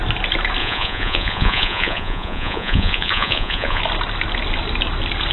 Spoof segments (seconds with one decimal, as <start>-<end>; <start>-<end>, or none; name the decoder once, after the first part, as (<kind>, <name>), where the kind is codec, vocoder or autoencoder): 0.6-3.8 (vocoder, Vocos)